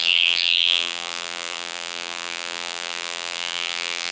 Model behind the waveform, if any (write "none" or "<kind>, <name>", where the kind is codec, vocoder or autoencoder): vocoder, BigVGAN v2